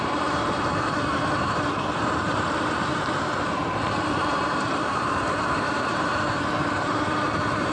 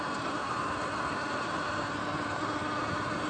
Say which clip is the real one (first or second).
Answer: second